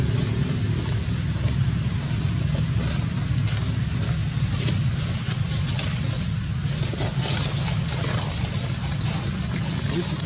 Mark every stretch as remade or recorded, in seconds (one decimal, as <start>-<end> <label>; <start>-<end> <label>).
0.0-10.3 recorded